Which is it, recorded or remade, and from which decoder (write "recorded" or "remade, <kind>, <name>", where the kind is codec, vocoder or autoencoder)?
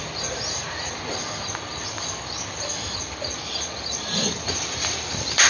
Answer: remade, vocoder, BigVGAN v2